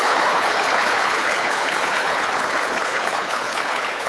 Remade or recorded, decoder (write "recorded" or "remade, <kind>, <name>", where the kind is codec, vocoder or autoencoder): remade, codec, HILCodec